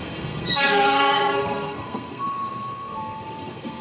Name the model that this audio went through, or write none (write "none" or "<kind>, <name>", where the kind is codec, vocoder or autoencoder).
codec, SNAC